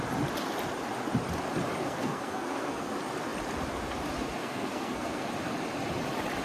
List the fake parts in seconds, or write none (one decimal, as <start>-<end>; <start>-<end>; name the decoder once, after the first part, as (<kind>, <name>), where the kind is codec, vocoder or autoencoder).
1.8-2.9 (codec, SNAC); 4.4-5.3